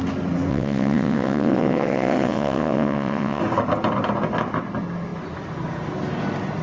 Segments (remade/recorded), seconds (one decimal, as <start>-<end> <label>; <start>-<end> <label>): 0.0-0.5 recorded; 0.5-3.4 remade; 3.4-6.6 recorded